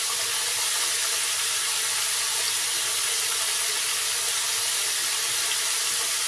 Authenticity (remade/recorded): recorded